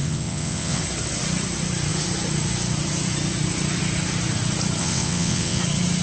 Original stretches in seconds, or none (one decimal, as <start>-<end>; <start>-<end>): 0.8-4.8; 5.6-6.0